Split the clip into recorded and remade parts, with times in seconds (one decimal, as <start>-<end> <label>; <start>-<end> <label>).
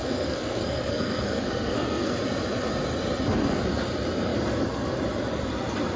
0.0-2.2 remade; 2.2-6.0 recorded